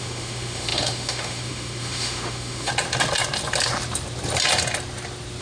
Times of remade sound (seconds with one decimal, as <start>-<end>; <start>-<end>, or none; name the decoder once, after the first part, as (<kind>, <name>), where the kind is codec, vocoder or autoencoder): 0.0-2.7 (autoencoder, DAC-VAE)